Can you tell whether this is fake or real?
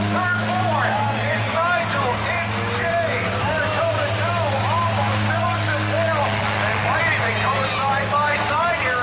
real